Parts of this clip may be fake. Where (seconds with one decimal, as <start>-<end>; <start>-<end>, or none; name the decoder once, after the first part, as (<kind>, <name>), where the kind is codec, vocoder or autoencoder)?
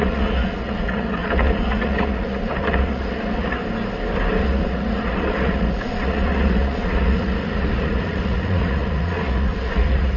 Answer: 0.0-3.6 (vocoder, Vocos); 4.4-10.2